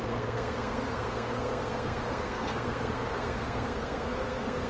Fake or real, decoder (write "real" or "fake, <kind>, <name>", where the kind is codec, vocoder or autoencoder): fake, codec, SNAC